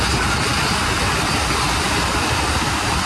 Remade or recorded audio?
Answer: recorded